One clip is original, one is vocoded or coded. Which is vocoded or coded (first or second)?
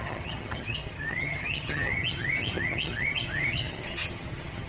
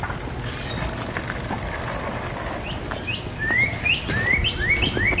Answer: first